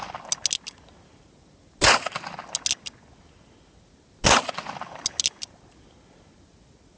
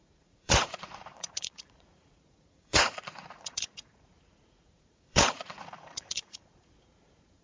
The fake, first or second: second